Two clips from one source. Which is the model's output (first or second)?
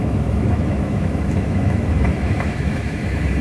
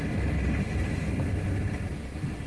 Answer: first